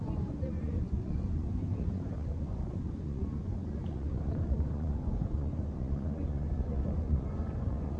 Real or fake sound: fake